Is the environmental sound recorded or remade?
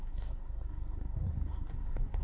remade